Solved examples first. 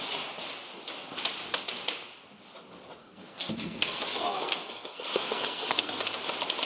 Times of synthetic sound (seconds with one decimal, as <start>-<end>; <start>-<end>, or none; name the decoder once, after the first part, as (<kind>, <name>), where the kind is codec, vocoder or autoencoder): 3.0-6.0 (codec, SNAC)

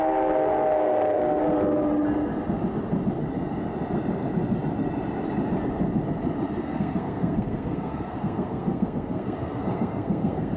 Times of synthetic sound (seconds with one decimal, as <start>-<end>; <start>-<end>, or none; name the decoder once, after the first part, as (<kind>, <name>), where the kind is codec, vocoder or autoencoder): 0.0-1.4 (codec, SNAC); 6.6-10.6

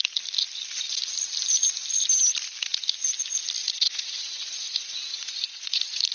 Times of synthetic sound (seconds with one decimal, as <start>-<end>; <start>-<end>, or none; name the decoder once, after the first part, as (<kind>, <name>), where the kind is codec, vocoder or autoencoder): 3.6-6.1 (vocoder, Vocos)

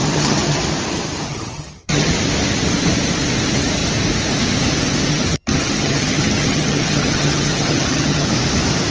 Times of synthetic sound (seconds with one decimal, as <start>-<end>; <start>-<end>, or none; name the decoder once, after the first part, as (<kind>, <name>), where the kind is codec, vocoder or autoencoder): 0.0-0.6 (vocoder, HiFi-GAN); 1.3-2.1; 5.1-8.3

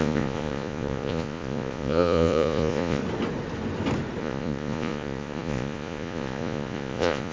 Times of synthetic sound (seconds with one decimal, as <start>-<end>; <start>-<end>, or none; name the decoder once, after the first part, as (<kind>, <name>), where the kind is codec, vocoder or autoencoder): 0.0-3.0 (vocoder, Vocos); 4.2-7.3

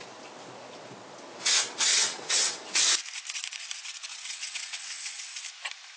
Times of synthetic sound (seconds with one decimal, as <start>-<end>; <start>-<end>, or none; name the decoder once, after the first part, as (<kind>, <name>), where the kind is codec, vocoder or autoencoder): 1.9-2.8 (vocoder, WaveNeXt); 4.1-5.2